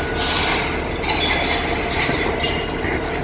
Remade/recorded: recorded